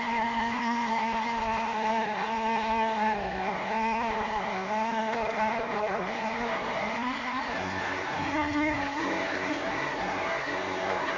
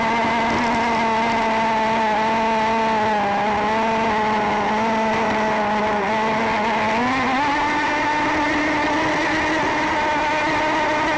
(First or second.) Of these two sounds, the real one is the second